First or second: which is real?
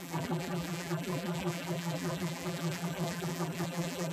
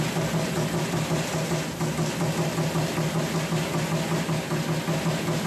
second